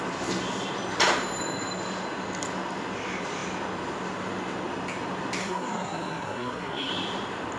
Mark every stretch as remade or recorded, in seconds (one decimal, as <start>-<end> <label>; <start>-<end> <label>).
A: 0.0-5.4 recorded; 5.4-6.9 remade; 6.9-7.6 recorded